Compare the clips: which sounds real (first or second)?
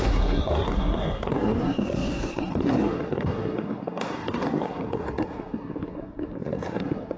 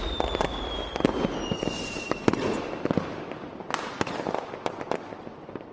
second